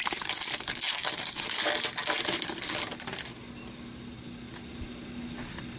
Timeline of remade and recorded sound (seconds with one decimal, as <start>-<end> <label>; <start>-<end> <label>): 0.0-5.8 recorded